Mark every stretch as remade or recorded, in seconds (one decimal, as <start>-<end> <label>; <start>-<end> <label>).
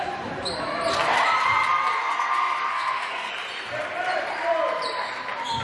0.0-2.0 recorded; 2.0-3.3 remade; 3.3-5.6 recorded